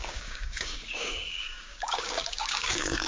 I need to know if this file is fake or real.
fake